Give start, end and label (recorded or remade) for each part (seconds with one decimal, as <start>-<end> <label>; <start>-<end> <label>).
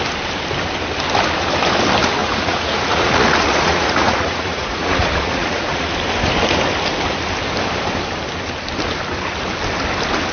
0.0-2.2 recorded; 2.2-5.9 remade; 5.9-10.3 recorded